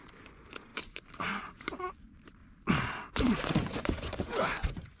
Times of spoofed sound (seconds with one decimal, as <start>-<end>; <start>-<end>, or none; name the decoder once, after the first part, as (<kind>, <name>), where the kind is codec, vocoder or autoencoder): 0.0-2.4 (vocoder, Vocos); 3.2-5.0